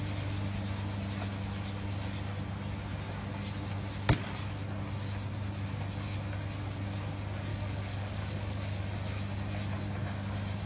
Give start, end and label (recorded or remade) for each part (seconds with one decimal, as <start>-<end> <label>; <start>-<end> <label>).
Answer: 0.0-7.5 recorded; 7.5-8.8 remade; 8.8-10.7 recorded